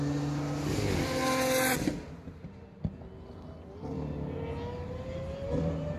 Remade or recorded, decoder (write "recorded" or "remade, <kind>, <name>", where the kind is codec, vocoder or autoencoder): recorded